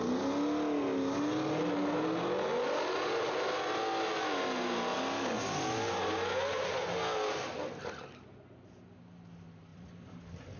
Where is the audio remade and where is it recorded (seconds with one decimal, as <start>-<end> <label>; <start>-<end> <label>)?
0.0-9.7 recorded; 9.7-10.6 remade